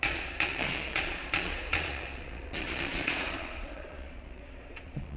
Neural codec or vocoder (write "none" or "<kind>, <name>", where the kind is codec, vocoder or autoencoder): vocoder, Vocos